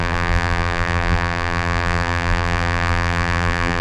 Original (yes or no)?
no